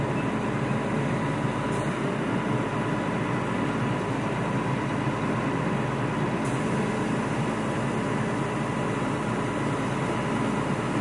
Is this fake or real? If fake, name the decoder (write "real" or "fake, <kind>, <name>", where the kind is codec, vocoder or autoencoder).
real